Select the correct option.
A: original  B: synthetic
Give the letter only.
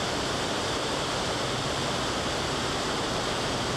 B